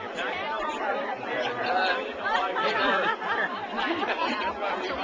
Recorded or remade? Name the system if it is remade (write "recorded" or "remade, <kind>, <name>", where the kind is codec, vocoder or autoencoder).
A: remade, vocoder, BigVGAN v2